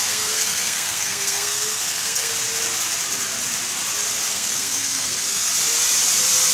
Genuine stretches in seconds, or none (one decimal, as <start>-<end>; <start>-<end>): 2.3-4.3; 5.5-6.5